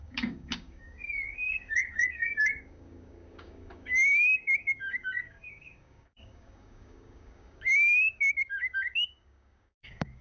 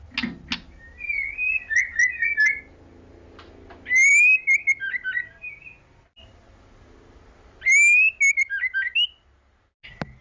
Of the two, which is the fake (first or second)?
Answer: first